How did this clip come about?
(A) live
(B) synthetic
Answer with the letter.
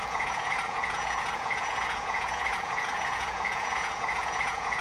B